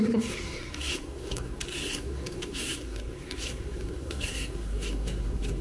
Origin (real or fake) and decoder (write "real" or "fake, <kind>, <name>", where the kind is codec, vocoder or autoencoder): fake, codec, SNAC